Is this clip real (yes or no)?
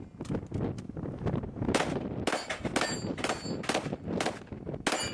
yes